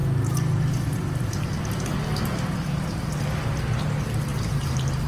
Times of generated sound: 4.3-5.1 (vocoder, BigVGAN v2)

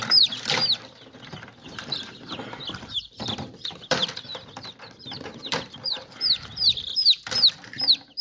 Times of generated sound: 0.0-0.6 (vocoder, BigVGAN v2); 2.9-4.3; 5.2-7.0; 7.5-8.2

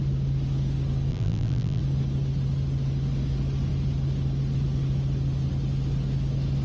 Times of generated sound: 1.1-1.8 (vocoder, BigVGAN v2)